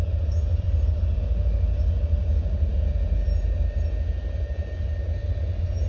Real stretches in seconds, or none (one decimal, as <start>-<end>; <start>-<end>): 0.0-0.5; 1.2-5.9

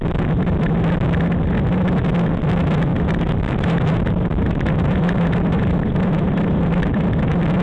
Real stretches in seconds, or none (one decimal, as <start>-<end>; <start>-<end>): 0.0-2.9; 6.8-7.6

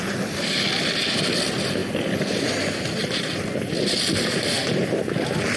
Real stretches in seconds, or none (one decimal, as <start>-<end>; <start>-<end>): 0.0-5.6

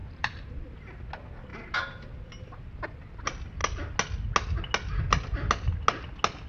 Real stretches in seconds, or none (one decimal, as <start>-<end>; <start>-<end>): 0.5-6.5

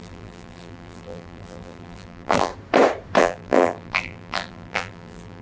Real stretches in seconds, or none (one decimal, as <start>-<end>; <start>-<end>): 2.5-3.2

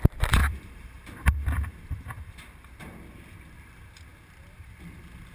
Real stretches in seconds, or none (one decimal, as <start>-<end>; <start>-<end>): 0.0-0.4; 3.6-5.3

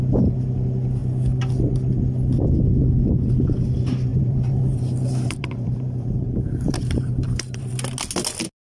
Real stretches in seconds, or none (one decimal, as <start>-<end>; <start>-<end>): 0.0-4.1; 7.7-8.6